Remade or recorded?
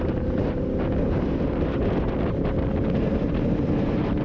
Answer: recorded